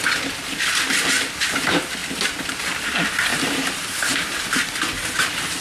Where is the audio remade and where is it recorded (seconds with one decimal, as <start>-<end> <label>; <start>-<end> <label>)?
0.0-3.3 recorded; 3.3-4.7 remade; 4.7-5.6 recorded